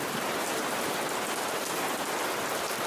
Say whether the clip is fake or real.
real